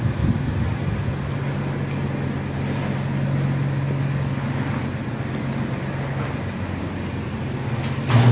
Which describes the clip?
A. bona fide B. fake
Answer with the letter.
A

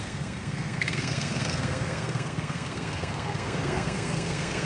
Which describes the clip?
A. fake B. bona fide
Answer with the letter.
A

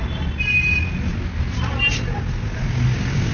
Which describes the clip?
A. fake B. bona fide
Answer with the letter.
B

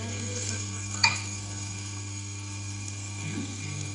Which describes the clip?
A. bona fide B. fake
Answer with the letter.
B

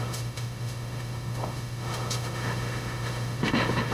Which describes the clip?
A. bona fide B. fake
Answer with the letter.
B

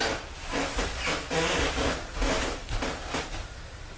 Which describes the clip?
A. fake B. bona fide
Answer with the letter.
B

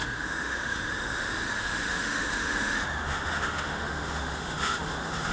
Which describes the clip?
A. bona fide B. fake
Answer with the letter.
B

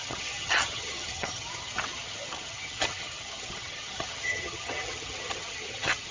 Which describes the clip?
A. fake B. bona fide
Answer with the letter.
A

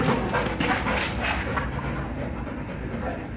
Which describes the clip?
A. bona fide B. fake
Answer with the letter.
A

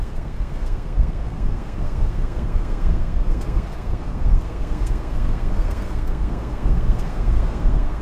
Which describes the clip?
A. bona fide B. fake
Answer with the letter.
B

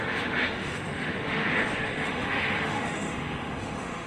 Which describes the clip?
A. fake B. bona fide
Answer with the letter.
A